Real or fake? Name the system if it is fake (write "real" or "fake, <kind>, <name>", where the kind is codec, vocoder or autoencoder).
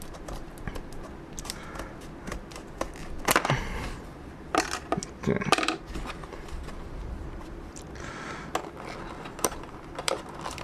real